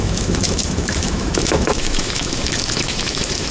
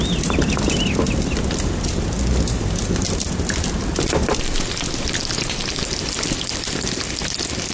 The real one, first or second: second